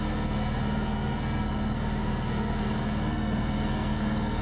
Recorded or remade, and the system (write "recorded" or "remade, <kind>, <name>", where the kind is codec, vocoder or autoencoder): remade, codec, SNAC